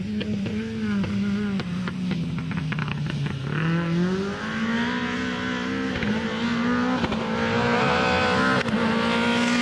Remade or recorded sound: recorded